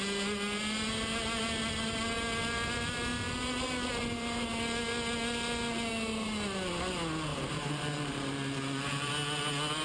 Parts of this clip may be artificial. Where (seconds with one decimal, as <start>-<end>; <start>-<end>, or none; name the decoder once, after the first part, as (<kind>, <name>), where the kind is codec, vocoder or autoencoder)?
7.3-9.1 (vocoder, BigVGAN v2)